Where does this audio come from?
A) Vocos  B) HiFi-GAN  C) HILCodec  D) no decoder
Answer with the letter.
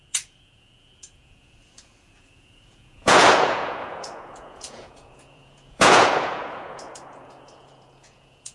A